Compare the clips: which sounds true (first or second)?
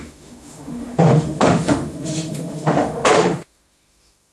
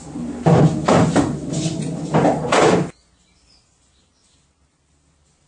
second